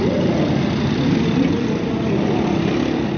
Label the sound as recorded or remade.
recorded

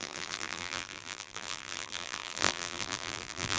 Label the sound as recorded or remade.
remade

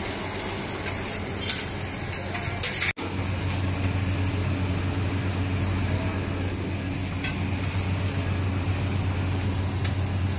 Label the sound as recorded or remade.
recorded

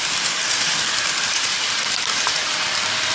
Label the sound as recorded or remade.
remade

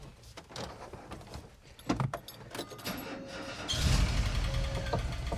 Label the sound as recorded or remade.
recorded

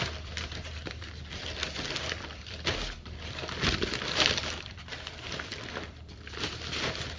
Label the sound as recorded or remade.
remade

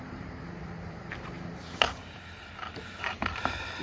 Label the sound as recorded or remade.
remade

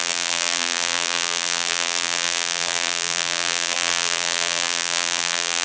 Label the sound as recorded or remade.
remade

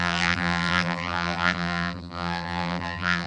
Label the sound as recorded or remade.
remade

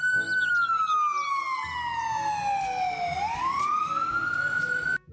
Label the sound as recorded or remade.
recorded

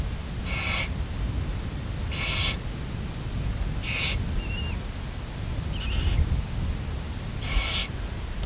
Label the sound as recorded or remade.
recorded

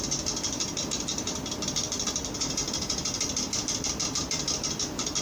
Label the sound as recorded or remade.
remade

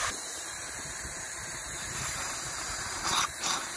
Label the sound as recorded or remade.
remade